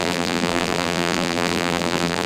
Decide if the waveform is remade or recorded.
remade